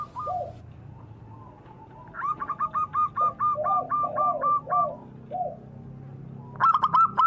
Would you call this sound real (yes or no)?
yes